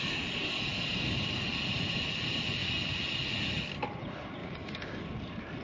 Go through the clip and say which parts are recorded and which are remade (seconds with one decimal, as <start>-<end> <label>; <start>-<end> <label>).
0.0-4.4 recorded; 4.4-5.0 remade; 5.0-5.6 recorded